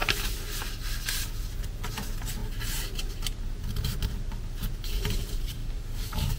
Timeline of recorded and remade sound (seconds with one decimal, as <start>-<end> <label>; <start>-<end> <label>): 0.0-5.6 recorded; 5.6-6.4 remade

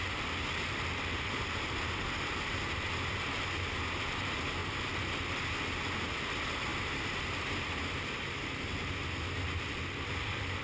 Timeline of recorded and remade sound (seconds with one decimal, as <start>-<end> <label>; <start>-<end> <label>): 0.0-10.6 recorded

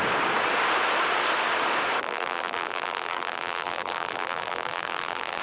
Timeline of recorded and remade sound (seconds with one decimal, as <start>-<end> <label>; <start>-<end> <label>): 0.0-2.0 recorded; 2.0-5.4 remade